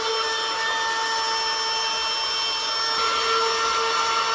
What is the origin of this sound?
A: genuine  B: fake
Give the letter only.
A